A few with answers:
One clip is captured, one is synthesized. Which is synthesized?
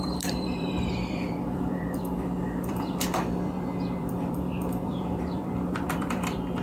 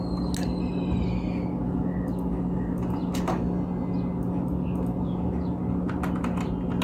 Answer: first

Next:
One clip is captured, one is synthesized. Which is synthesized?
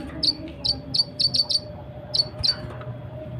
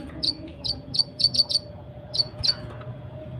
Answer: second